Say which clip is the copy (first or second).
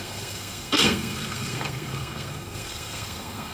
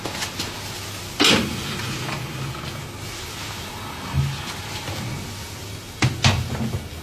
first